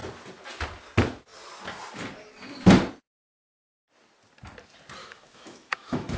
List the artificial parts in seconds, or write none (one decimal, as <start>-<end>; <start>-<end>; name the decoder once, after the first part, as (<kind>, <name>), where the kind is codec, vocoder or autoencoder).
5.0-6.2 (autoencoder, DAC-VAE)